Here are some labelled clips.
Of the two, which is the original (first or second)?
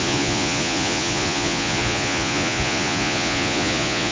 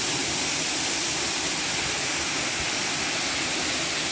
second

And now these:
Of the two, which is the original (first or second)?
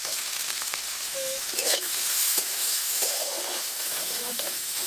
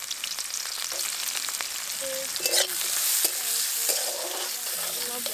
second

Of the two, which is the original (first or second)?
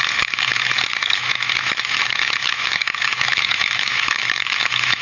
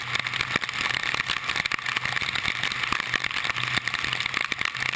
second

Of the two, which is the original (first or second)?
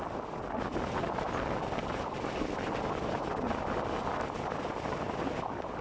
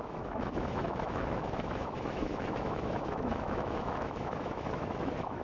first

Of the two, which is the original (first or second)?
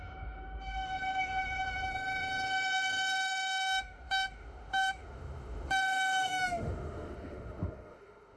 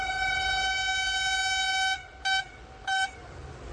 second